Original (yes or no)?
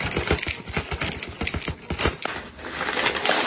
yes